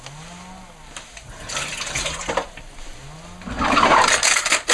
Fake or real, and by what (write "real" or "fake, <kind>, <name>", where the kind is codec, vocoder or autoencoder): real